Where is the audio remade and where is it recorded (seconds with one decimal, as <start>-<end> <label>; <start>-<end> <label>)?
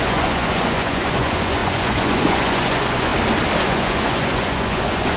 0.0-3.1 remade; 3.1-3.6 recorded; 3.6-5.2 remade